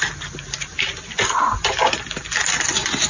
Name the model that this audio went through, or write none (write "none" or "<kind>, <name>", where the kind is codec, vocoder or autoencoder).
none